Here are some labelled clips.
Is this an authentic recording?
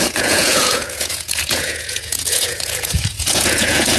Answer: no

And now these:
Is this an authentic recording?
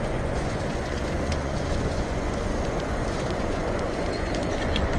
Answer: no